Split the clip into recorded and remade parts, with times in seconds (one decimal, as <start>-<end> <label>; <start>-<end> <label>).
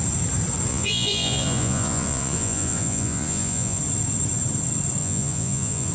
0.0-0.7 recorded; 0.7-3.8 remade; 3.8-5.0 recorded; 5.0-5.9 remade